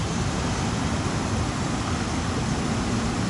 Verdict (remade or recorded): recorded